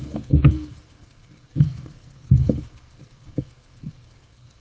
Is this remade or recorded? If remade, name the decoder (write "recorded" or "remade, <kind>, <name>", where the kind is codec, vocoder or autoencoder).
remade, codec, SNAC